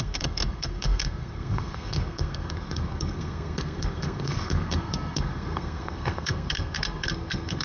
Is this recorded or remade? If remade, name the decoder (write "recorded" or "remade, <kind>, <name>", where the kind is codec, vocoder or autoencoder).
remade, codec, SNAC